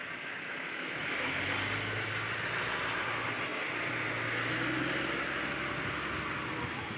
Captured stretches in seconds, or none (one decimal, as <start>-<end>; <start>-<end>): 1.4-7.0

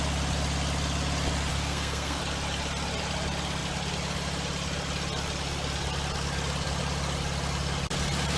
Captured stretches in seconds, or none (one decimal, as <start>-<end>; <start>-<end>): 0.0-1.5; 2.2-8.4

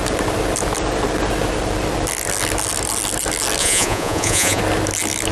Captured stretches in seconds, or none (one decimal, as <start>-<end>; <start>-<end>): 0.0-3.6; 4.6-5.3

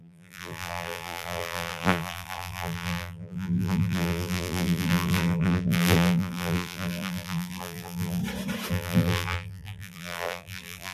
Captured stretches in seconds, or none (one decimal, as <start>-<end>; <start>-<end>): 8.2-8.7